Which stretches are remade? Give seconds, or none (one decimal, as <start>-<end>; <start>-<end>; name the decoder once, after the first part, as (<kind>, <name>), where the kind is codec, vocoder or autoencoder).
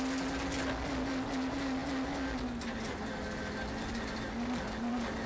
none